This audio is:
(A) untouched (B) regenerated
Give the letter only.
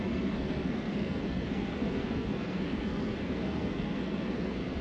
B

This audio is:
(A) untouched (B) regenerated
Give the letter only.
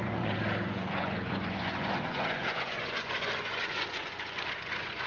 B